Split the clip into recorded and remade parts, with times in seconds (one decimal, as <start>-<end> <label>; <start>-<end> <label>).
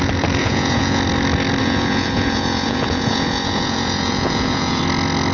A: 0.0-0.4 recorded; 0.4-1.0 remade; 1.0-1.6 recorded; 1.6-4.8 remade; 4.8-5.3 recorded